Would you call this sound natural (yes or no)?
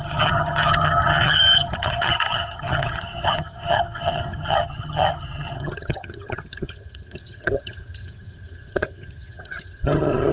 no